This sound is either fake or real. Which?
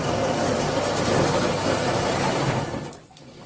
real